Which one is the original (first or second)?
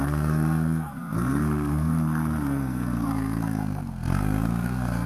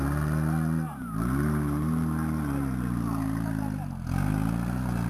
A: second